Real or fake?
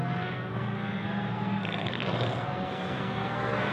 fake